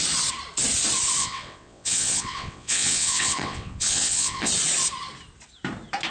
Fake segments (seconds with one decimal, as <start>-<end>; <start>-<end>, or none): 1.2-4.5